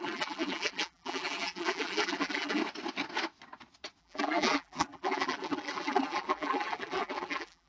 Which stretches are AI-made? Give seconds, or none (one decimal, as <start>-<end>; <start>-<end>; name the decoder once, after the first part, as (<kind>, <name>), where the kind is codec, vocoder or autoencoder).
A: 0.0-2.6 (vocoder, BigVGAN v2); 4.0-7.7